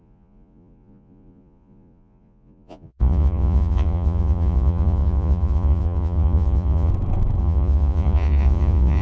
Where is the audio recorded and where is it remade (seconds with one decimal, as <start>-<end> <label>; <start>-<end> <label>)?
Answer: 0.0-6.9 remade; 6.9-7.4 recorded; 7.4-9.0 remade